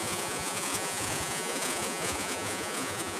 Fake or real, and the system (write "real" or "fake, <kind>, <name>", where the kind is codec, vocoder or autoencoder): fake, vocoder, Vocos